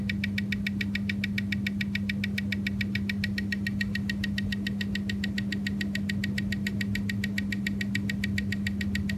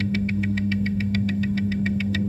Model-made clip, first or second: second